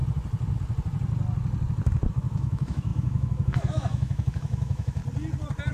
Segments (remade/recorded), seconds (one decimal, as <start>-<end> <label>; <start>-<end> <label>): 0.0-2.1 recorded; 2.1-5.0 remade; 5.0-5.7 recorded